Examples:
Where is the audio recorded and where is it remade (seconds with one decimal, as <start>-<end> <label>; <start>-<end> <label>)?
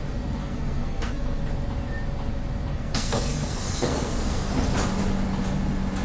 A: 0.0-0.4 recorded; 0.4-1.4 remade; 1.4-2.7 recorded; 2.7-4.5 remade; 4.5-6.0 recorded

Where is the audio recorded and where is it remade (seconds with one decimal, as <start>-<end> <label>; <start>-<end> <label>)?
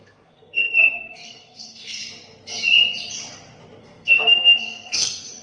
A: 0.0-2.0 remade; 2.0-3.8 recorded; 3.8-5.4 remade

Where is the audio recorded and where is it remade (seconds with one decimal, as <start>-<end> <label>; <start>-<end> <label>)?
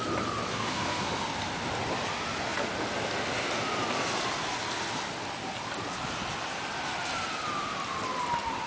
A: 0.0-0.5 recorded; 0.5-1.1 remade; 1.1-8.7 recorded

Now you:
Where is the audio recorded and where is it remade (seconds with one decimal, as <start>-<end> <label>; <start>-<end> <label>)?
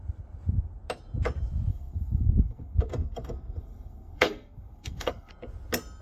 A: 0.0-1.7 recorded; 1.7-5.3 remade; 5.3-6.0 recorded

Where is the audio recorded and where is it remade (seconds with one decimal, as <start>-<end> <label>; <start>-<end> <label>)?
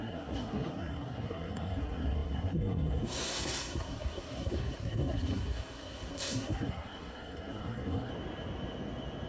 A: 0.0-8.1 remade; 8.1-9.3 recorded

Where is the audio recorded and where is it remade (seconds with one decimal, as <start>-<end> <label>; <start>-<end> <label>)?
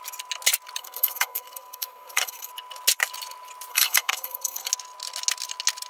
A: 0.0-0.8 recorded; 0.8-2.5 remade; 2.5-3.7 recorded; 3.7-4.7 remade; 4.7-5.9 recorded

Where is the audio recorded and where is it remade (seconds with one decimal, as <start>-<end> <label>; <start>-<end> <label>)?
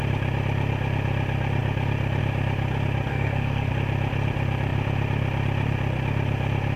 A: 0.0-3.1 recorded; 3.1-3.7 remade; 3.7-6.8 recorded